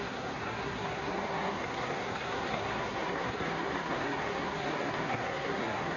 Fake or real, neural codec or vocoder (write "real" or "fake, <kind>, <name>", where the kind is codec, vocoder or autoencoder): fake, codec, SNAC